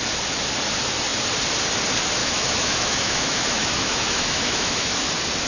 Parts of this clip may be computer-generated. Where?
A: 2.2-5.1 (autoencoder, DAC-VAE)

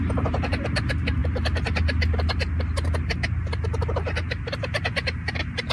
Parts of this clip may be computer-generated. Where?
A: none

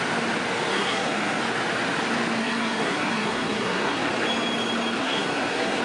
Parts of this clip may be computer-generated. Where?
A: 0.7-1.4 (codec, SNAC); 2.4-4.1; 5.0-5.8